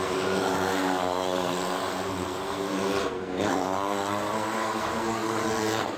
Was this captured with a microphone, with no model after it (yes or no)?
no